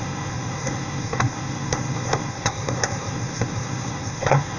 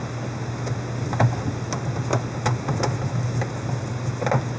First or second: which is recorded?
second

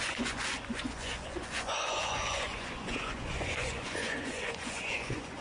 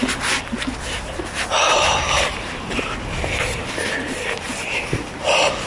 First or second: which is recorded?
second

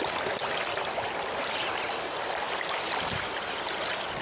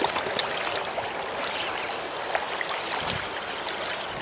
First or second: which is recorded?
second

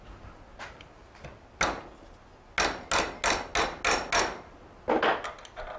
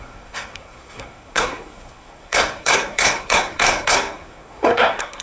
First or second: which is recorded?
first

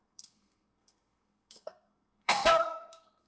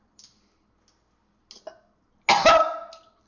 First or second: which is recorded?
second